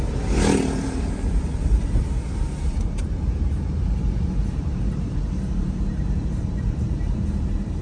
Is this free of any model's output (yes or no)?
no